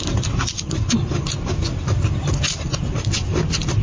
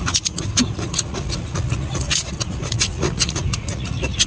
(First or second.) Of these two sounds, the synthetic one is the second